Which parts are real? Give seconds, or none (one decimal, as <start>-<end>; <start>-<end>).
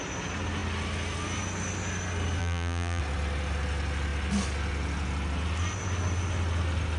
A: 0.0-2.4; 3.0-7.0